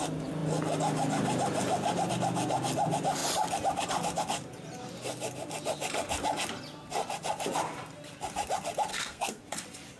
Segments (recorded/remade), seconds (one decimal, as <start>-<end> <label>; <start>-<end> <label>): 0.0-8.9 recorded; 8.9-9.4 remade; 9.4-10.0 recorded

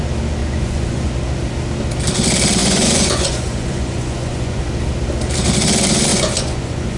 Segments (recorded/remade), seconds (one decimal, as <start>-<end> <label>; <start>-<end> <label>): 0.0-0.4 recorded; 0.4-1.1 remade; 1.1-2.6 recorded; 2.6-4.6 remade; 4.6-6.1 recorded; 6.1-7.0 remade

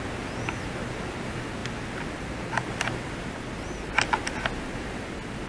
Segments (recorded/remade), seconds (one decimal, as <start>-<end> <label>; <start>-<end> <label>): 0.0-5.5 recorded

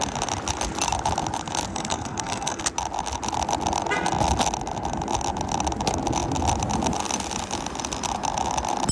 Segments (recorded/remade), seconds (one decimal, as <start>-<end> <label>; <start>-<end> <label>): 0.0-1.7 recorded; 1.7-2.6 remade; 2.6-8.9 recorded